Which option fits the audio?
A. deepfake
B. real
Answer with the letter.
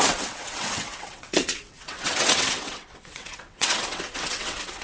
A